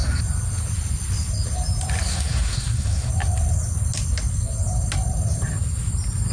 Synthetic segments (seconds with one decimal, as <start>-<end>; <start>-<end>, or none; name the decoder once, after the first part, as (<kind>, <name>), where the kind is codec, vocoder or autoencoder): 2.1-3.1 (codec, SNAC)